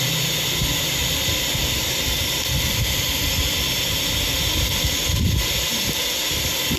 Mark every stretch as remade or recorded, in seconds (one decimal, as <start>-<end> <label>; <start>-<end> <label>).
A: 0.0-6.8 recorded